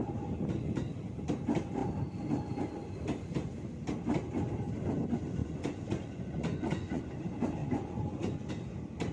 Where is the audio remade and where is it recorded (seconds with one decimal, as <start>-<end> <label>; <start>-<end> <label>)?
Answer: 0.0-5.4 recorded; 5.4-7.0 remade; 7.0-7.6 recorded; 7.6-8.5 remade; 8.5-9.1 recorded